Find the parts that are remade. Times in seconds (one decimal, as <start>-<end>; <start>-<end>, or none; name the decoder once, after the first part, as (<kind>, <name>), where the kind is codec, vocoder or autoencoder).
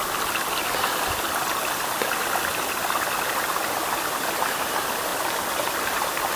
5.1-6.4 (vocoder, BigVGAN v2)